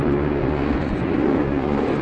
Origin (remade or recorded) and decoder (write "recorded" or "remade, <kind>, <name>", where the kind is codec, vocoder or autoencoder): remade, vocoder, Vocos